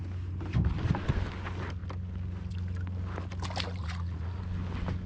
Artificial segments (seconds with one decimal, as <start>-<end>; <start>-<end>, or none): 3.8-4.4